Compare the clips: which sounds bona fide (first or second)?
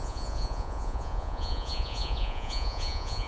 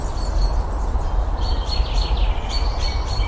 second